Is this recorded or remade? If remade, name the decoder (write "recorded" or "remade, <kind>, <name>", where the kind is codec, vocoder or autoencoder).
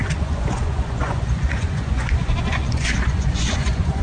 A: remade, vocoder, Vocos